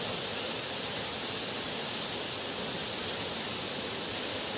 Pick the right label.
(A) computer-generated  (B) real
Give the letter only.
B